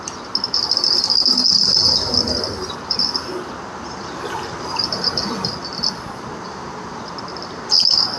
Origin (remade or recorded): recorded